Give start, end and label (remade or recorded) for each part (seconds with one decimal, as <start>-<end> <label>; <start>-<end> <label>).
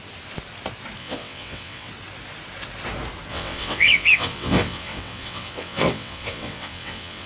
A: 0.0-1.0 recorded; 1.0-1.9 remade; 1.9-3.3 recorded; 3.3-7.3 remade